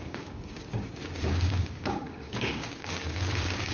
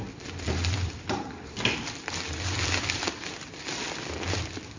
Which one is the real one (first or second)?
second